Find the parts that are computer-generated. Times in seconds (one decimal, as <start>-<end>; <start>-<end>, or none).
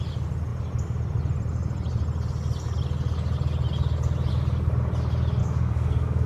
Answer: 5.4-6.3